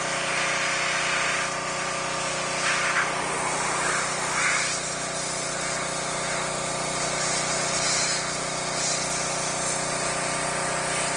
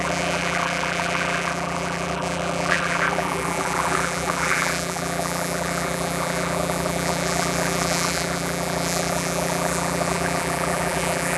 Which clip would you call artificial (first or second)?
second